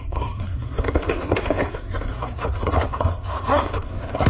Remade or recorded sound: remade